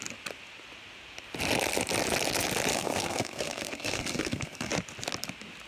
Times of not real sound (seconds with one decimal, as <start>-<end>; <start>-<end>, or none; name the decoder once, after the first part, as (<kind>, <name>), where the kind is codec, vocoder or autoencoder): 2.7-4.7 (codec, SNAC)